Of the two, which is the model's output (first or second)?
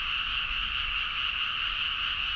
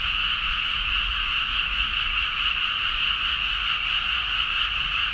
second